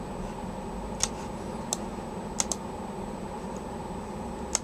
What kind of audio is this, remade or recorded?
recorded